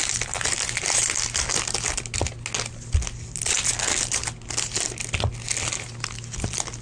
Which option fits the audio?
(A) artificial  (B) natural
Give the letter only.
B